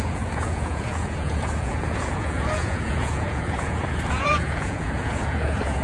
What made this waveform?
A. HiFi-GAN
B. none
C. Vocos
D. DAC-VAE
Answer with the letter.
C